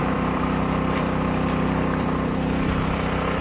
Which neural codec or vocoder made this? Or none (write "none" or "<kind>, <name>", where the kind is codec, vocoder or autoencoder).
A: vocoder, BigVGAN v2